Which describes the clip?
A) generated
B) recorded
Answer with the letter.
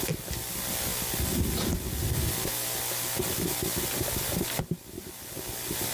B